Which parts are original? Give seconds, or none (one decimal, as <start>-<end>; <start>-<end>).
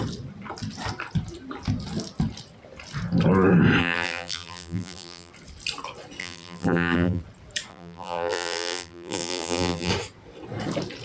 0.0-3.8; 5.3-6.2; 7.2-7.7; 9.9-11.0